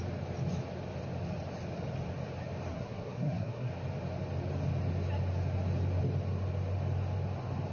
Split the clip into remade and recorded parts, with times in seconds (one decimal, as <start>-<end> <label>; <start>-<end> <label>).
0.0-2.7 recorded; 2.7-3.7 remade; 3.7-7.7 recorded